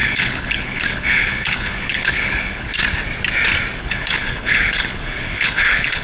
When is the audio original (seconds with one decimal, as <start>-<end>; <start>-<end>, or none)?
2.7-3.8